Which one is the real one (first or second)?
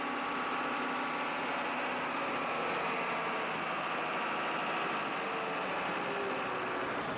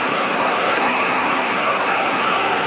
first